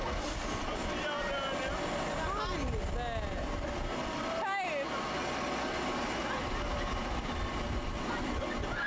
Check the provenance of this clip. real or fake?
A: real